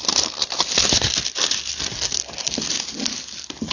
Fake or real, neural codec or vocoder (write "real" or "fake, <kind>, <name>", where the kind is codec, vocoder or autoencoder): real